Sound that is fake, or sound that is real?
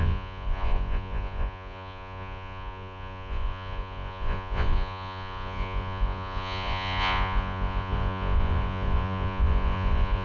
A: fake